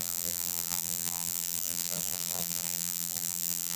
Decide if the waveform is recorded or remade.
remade